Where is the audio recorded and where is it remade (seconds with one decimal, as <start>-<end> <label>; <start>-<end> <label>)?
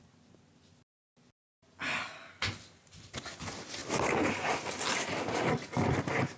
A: 0.0-6.4 recorded